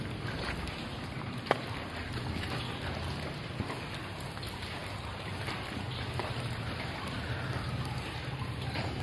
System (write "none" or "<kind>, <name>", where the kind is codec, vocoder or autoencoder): none